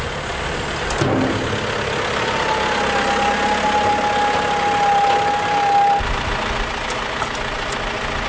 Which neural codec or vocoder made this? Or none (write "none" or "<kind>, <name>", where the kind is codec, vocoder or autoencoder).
none